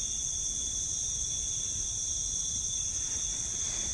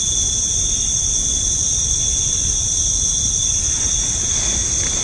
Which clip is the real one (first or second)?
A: second